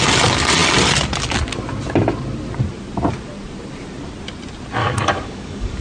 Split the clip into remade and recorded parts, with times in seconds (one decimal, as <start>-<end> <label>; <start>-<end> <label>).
0.0-4.8 recorded; 4.8-5.8 remade